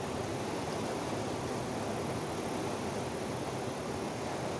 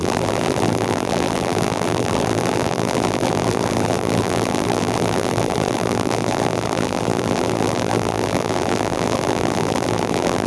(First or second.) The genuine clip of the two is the first